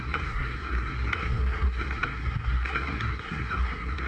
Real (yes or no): no